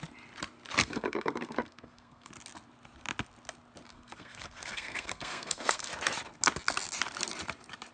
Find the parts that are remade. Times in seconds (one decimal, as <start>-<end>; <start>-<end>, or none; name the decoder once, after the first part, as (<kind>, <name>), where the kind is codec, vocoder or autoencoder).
0.8-2.3 (codec, SNAC); 3.9-5.9